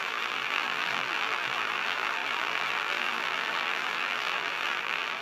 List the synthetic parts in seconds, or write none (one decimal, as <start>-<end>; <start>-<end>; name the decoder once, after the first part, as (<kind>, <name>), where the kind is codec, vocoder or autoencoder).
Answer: 0.0-5.2 (vocoder, BigVGAN v2)